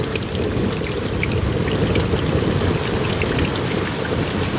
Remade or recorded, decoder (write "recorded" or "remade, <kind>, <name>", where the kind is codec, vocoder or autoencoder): recorded